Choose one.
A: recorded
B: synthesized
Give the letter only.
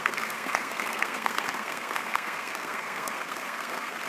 B